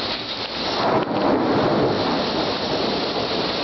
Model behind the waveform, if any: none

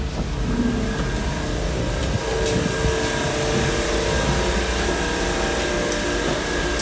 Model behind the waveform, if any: none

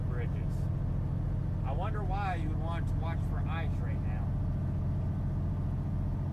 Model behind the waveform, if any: none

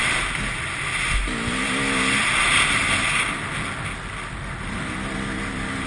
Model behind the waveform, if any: none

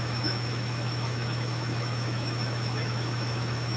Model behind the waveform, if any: autoencoder, DAC-VAE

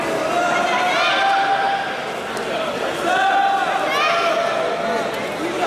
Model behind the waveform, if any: none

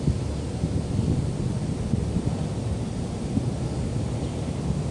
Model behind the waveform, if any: none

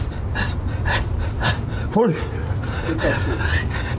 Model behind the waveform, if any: none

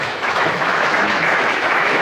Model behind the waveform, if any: autoencoder, DAC-VAE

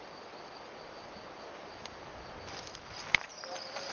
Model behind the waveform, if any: none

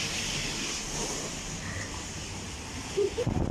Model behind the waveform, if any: none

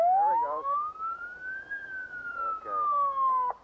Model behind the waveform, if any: none